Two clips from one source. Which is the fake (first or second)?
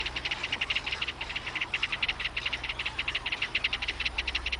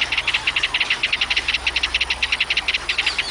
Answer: first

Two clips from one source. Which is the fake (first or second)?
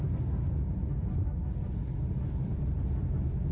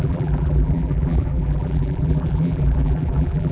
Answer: second